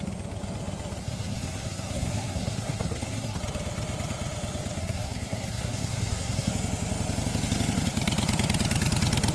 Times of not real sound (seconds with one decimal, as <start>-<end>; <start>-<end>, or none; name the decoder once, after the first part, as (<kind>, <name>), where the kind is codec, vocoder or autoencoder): 1.0-3.4 (codec, SNAC); 4.8-6.5